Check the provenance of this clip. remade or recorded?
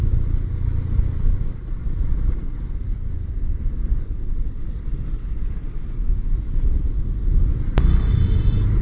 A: recorded